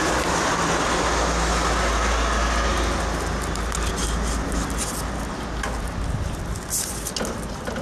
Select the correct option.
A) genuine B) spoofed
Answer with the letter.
A